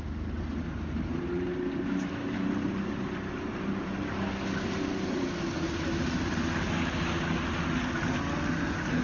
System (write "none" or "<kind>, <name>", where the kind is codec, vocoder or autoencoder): none